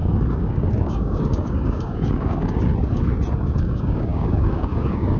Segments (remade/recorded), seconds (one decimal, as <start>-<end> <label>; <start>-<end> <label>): 0.0-2.7 remade; 2.7-3.4 recorded; 3.4-5.2 remade